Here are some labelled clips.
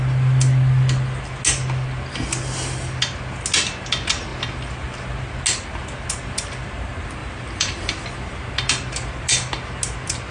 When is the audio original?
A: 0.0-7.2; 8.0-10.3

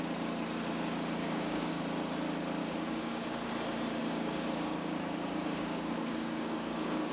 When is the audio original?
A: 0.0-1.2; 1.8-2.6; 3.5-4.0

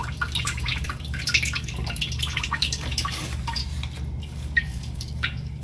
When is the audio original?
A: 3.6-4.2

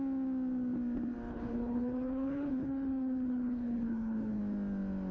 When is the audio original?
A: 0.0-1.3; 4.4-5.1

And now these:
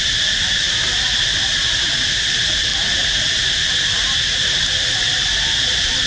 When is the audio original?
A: 0.6-2.2; 2.7-4.7